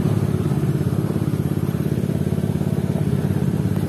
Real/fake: real